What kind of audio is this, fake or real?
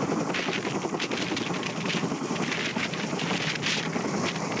real